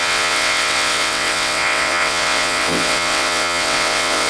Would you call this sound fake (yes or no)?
yes